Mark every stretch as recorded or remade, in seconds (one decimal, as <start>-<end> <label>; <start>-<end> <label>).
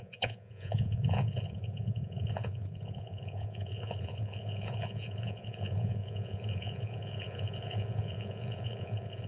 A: 0.0-9.3 remade